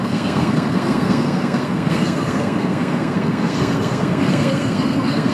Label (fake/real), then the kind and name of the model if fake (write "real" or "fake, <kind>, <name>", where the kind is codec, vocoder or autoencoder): fake, codec, SNAC